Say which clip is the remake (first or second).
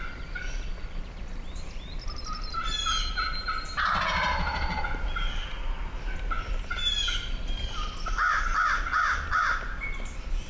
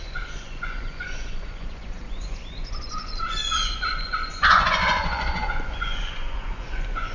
second